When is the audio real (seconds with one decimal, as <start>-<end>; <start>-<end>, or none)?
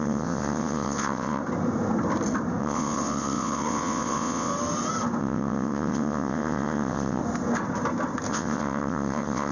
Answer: 1.4-2.6; 4.5-5.2; 7.2-8.3